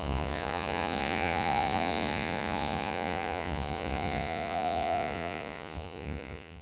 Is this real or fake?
fake